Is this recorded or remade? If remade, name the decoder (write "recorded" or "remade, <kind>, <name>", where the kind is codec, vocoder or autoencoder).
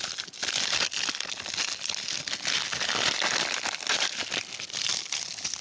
recorded